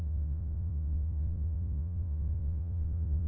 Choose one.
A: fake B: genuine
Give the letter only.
A